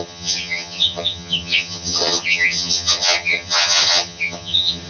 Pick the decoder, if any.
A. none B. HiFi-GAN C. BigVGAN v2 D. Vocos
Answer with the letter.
B